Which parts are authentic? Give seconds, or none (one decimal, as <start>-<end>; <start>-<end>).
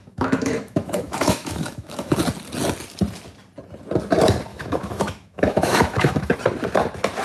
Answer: 2.2-4.5; 6.3-7.2